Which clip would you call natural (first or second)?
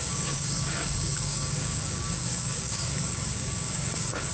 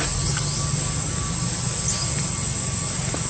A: second